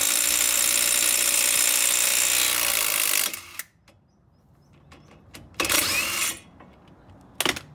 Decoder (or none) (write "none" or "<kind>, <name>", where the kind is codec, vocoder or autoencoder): none